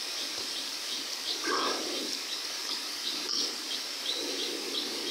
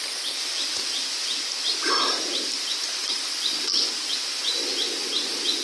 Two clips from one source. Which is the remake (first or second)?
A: first